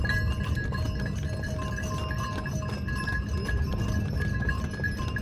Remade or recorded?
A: recorded